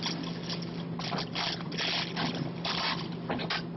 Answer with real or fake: real